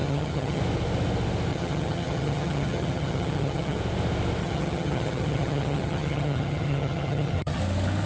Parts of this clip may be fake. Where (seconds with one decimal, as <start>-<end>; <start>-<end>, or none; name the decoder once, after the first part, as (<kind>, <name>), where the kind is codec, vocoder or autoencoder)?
0.0-0.6 (vocoder, HiFi-GAN); 1.5-3.8; 4.4-7.6

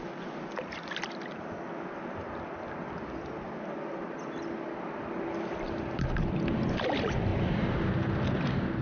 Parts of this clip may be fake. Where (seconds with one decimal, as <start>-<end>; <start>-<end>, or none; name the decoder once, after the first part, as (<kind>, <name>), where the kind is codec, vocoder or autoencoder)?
none

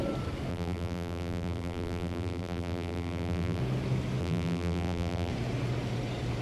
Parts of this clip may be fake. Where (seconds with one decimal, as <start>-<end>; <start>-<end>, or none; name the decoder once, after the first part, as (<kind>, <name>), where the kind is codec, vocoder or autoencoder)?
0.5-3.6 (vocoder, BigVGAN v2); 4.2-5.3

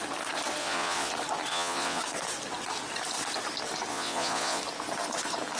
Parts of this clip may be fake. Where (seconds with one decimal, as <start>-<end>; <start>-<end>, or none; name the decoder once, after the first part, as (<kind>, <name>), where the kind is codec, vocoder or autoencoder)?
0.6-1.1 (vocoder, Vocos); 1.5-2.0; 3.9-4.6

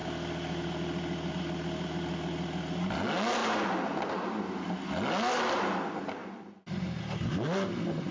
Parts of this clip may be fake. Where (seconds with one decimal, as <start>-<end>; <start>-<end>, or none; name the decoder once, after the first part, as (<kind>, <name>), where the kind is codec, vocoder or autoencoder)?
6.2-7.0 (vocoder, BigVGAN v2)

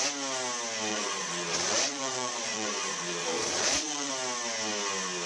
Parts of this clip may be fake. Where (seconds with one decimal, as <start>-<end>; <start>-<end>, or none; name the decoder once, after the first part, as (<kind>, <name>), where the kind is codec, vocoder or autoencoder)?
0.9-4.1 (vocoder, Vocos)

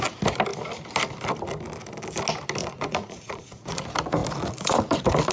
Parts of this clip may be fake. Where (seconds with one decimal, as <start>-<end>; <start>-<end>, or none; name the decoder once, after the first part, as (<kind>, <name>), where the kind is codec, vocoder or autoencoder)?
2.6-3.8 (vocoder, Vocos)